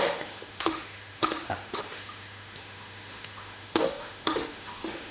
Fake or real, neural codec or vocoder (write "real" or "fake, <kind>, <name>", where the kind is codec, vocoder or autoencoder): fake, autoencoder, DAC-VAE